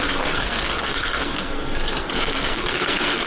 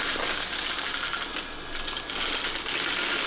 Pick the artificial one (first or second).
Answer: first